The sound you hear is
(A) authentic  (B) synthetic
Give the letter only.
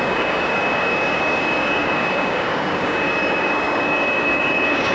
B